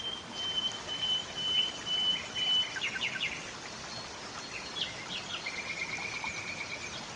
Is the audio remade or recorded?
recorded